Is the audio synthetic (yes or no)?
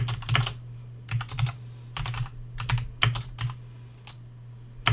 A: no